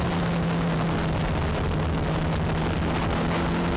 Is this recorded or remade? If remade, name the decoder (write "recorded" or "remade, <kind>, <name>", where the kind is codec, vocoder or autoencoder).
recorded